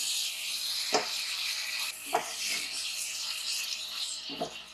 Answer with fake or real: real